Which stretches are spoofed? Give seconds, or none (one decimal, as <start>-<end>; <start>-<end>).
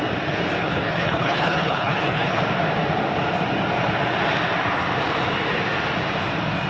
0.6-2.4